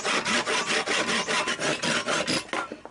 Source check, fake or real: real